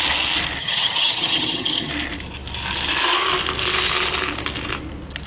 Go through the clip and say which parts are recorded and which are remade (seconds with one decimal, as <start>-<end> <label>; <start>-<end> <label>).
0.0-0.6 recorded; 0.6-1.9 remade; 1.9-5.3 recorded